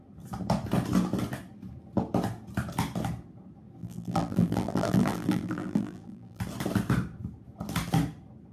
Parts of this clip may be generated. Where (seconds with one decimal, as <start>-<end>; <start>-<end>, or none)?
3.8-6.4